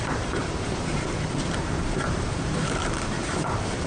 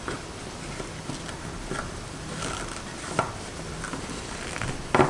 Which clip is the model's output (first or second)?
first